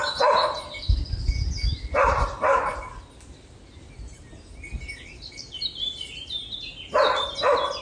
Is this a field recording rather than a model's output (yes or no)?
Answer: yes